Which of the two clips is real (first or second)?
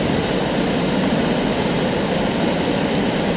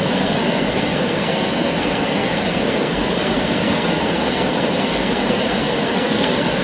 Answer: first